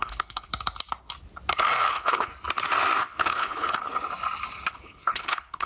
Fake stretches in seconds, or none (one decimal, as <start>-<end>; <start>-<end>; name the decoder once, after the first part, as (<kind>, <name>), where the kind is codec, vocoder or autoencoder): 0.0-0.5 (codec, HILCodec); 1.9-2.3; 3.0-3.9; 4.7-5.7